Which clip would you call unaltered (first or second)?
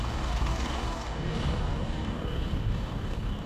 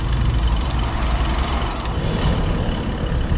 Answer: second